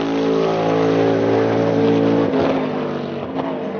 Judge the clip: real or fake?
real